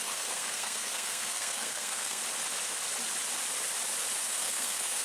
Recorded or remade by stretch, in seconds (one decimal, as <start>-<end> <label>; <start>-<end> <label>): 0.0-2.2 remade; 2.2-4.3 recorded; 4.3-5.0 remade